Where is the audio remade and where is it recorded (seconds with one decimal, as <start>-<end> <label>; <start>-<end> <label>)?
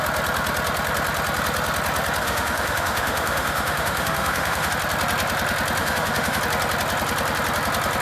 0.0-2.2 recorded; 2.2-4.7 remade; 4.7-5.8 recorded; 5.8-6.4 remade; 6.4-8.0 recorded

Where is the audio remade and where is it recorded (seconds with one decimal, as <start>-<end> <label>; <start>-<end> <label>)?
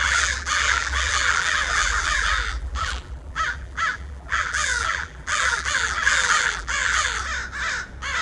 0.0-7.2 remade; 7.2-8.2 recorded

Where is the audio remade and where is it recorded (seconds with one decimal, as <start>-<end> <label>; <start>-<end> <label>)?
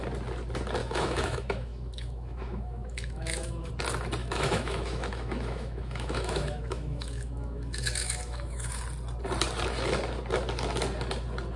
0.0-0.8 recorded; 0.8-3.7 remade; 3.7-4.2 recorded; 4.2-8.8 remade; 8.8-11.6 recorded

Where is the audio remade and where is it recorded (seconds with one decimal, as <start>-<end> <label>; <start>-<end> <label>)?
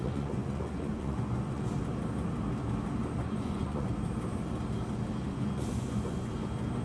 0.0-1.6 remade; 1.6-3.2 recorded; 3.2-3.9 remade; 3.9-5.2 recorded; 5.2-6.3 remade; 6.3-6.8 recorded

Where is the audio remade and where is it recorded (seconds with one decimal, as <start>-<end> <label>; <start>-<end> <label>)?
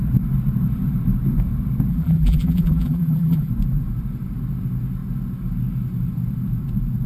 0.0-1.9 recorded; 1.9-3.5 remade; 3.5-7.1 recorded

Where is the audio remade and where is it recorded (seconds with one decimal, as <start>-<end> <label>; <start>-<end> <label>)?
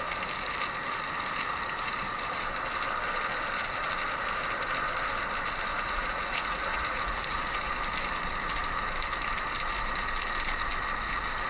0.0-5.7 recorded; 5.7-7.7 remade; 7.7-11.5 recorded